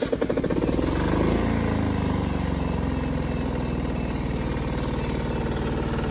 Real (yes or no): yes